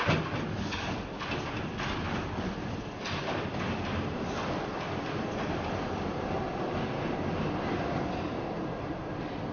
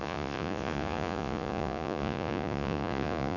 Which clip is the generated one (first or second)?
second